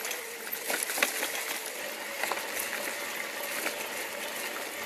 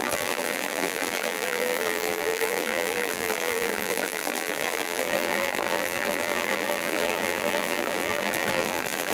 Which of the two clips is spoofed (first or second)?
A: second